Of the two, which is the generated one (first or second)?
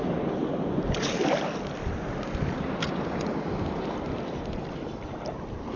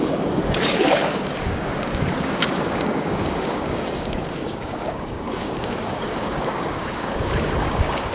second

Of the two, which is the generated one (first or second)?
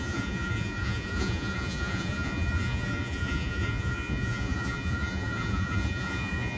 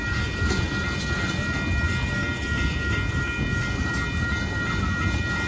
first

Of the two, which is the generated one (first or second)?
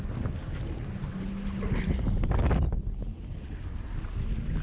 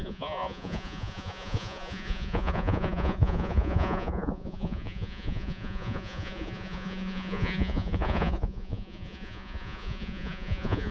second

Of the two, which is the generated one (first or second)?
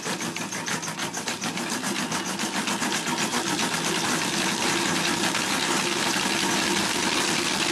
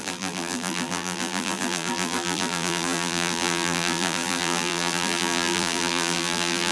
second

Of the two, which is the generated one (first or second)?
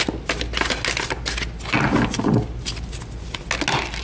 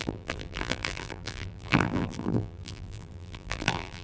second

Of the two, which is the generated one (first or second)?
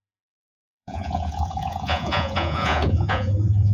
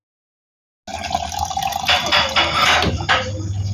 first